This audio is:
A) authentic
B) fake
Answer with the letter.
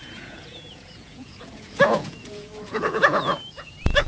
B